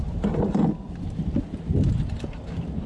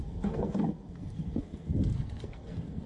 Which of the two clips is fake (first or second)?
second